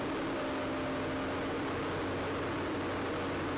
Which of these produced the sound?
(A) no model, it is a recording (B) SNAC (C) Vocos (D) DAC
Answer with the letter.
A